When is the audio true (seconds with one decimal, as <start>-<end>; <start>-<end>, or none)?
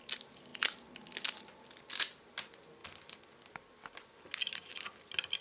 0.0-5.4